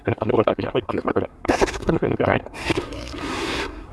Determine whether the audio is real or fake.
fake